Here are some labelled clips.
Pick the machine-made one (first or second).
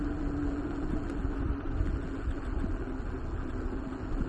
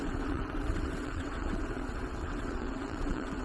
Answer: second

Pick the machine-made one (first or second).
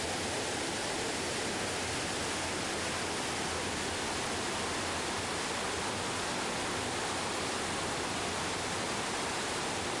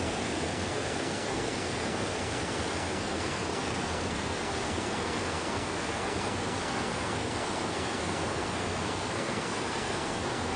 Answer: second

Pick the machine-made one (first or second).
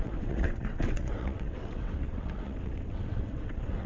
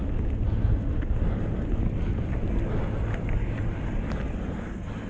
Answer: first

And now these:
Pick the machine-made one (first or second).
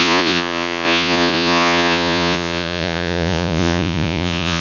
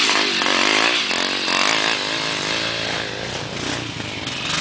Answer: first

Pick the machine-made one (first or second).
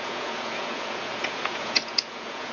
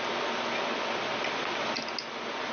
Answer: first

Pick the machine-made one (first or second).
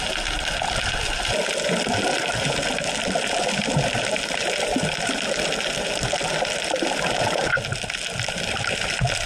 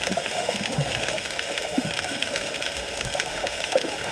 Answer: second